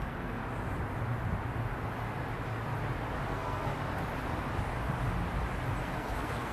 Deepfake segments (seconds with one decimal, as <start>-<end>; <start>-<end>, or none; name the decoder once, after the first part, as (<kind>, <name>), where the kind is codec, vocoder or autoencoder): 0.0-0.4 (codec, SNAC); 3.3-3.7; 5.8-6.5